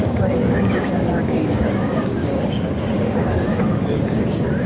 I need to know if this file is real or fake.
fake